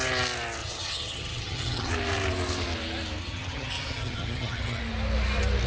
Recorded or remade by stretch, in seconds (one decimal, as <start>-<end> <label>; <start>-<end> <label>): 0.0-0.6 recorded; 0.6-1.9 remade; 1.9-3.2 recorded; 3.2-4.8 remade; 4.8-5.7 recorded